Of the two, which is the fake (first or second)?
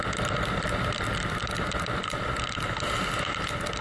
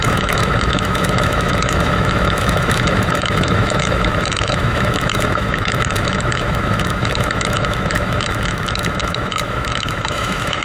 second